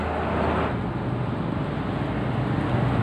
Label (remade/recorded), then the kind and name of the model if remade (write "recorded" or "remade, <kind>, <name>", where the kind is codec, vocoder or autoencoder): recorded